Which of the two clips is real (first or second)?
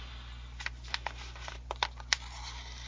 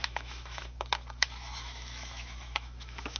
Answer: first